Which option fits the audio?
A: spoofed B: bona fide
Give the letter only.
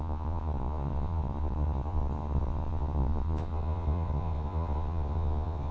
A